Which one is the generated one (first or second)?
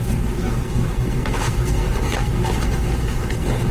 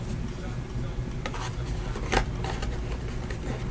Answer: first